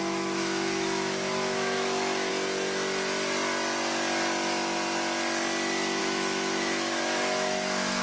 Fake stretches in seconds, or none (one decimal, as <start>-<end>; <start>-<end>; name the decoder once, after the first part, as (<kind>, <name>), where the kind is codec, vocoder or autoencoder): 0.0-2.3 (autoencoder, DAC-VAE); 6.0-8.0